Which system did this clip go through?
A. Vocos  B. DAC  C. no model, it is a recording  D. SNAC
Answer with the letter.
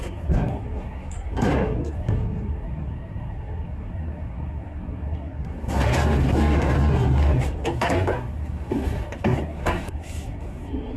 D